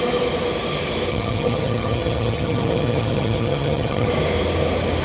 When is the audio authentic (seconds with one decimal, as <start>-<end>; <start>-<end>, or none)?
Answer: 0.0-1.1; 4.1-5.0